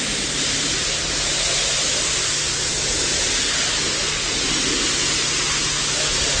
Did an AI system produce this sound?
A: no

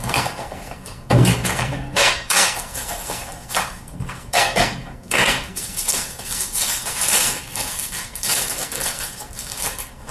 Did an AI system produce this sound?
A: yes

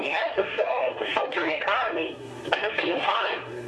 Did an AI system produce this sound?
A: yes